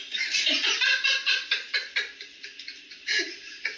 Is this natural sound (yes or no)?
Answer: yes